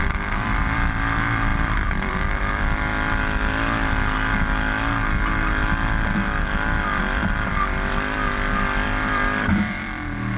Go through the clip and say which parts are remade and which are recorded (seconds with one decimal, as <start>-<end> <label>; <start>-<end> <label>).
0.0-2.9 remade; 2.9-7.0 recorded; 7.0-10.4 remade